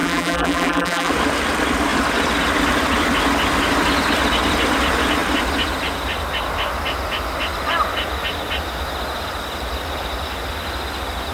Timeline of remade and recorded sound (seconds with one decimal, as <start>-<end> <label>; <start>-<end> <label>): 0.0-1.1 remade; 1.1-11.3 recorded